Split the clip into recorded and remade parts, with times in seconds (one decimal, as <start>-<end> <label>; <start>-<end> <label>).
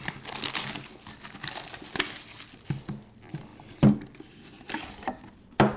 0.0-5.8 recorded